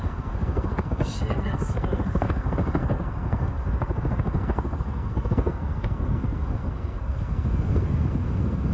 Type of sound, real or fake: fake